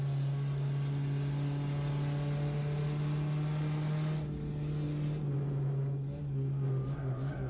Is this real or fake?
real